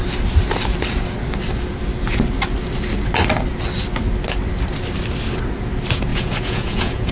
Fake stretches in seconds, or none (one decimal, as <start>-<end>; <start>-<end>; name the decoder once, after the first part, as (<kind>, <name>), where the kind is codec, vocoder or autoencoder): 6.1-7.1 (vocoder, Vocos)